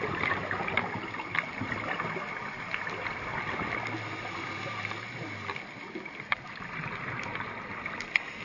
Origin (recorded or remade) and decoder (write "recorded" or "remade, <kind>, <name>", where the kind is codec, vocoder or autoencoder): recorded